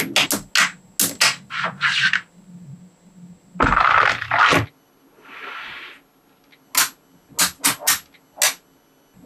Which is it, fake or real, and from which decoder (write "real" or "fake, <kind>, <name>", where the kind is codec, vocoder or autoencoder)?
real